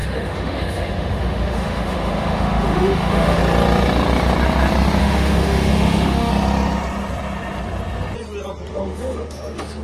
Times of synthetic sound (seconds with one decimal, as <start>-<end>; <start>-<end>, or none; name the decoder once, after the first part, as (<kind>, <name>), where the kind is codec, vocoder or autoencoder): 0.0-3.4 (autoencoder, DAC-VAE); 5.0-6.3; 8.7-9.8